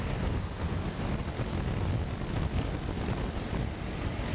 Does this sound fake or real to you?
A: real